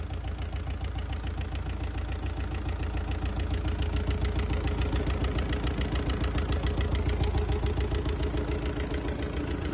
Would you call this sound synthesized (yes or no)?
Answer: no